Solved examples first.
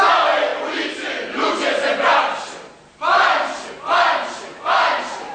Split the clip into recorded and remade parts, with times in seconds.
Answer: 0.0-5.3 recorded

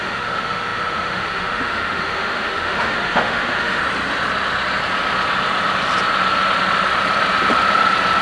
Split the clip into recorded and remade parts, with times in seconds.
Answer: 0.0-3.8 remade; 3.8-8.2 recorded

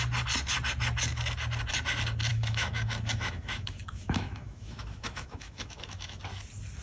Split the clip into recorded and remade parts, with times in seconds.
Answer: 0.0-2.3 recorded; 2.3-6.2 remade; 6.2-6.8 recorded

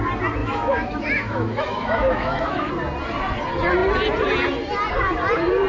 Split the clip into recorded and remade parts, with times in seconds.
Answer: 0.0-0.4 recorded; 0.4-2.7 remade; 2.7-5.7 recorded